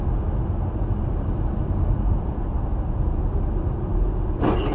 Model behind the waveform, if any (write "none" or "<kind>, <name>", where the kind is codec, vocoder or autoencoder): none